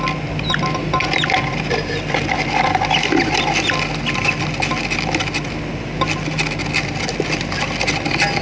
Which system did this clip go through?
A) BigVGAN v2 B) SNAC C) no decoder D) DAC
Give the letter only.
C